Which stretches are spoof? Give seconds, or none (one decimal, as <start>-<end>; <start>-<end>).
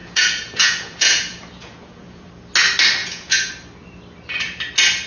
0.0-2.3; 3.0-3.5